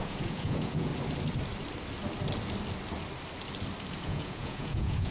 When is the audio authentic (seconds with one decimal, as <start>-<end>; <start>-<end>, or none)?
0.9-4.0